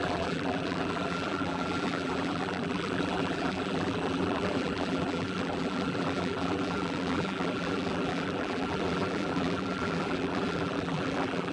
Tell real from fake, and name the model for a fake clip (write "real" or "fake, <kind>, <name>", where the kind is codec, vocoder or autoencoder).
fake, vocoder, BigVGAN v2